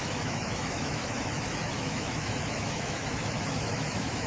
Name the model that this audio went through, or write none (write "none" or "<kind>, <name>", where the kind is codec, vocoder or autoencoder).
autoencoder, DAC-VAE